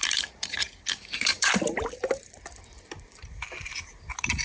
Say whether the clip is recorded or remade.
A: remade